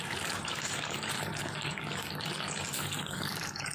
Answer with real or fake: fake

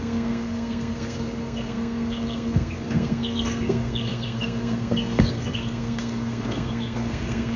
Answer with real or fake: fake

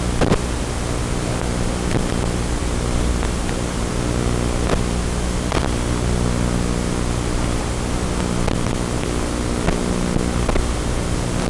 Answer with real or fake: real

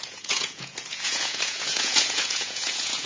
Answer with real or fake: fake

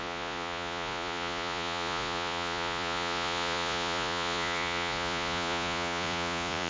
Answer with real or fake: fake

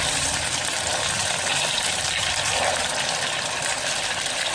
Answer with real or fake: fake